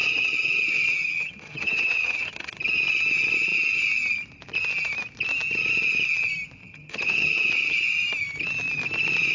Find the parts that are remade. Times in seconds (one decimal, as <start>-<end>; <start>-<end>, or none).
0.0-2.6; 6.6-7.5